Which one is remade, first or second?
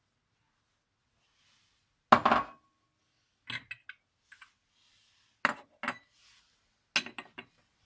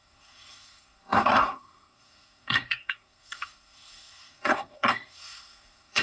second